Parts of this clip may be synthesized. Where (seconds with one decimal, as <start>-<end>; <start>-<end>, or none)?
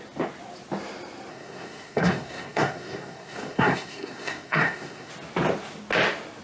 1.3-5.1